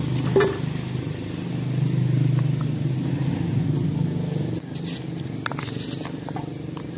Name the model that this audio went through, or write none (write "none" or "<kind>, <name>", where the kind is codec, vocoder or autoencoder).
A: none